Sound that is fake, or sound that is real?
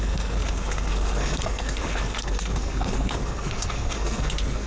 fake